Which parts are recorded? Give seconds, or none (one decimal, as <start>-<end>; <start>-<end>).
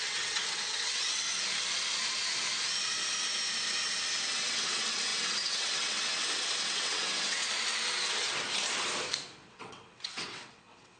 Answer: 1.3-4.3; 7.4-9.5